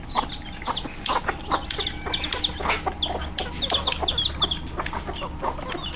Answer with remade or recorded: recorded